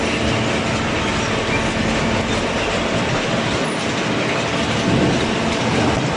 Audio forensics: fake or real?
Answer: real